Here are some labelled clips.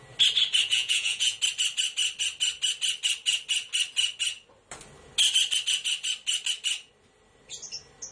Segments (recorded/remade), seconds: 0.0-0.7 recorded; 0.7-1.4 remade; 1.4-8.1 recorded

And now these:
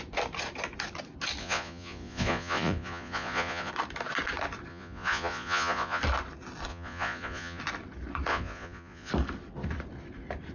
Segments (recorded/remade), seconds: 0.0-1.4 recorded; 1.4-3.7 remade; 3.7-4.7 recorded; 4.7-6.0 remade; 6.0-6.7 recorded; 6.7-7.6 remade; 7.6-8.3 recorded; 8.3-9.1 remade; 9.1-10.5 recorded

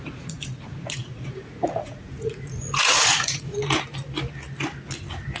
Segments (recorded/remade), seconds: 0.0-3.6 remade; 3.6-5.4 recorded

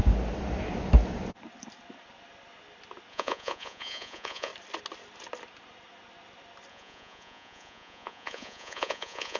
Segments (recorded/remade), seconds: 0.0-3.1 recorded; 3.1-4.5 remade; 4.5-6.7 recorded; 6.7-9.4 remade

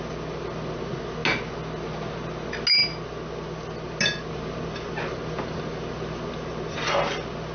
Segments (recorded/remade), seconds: 0.0-7.5 recorded